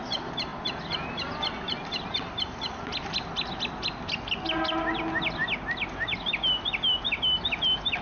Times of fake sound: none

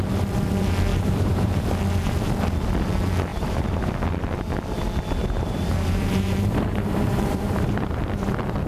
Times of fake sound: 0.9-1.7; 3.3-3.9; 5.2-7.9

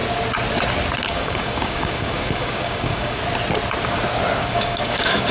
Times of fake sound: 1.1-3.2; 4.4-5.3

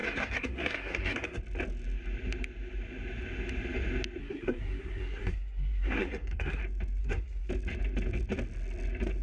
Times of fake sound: 0.0-1.4; 4.2-6.6; 7.0-7.5

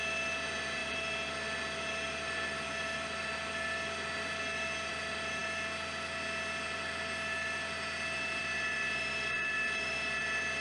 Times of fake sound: 0.0-5.4; 8.4-10.6